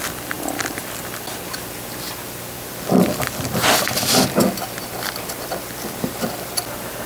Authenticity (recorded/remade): recorded